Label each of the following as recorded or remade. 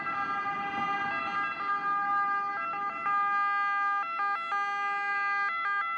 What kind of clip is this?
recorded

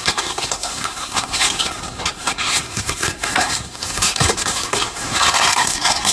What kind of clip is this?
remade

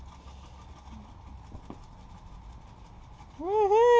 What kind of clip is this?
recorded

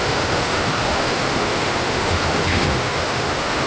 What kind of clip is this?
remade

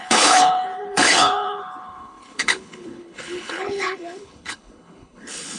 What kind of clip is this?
remade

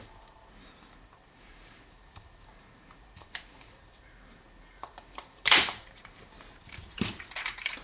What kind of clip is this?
remade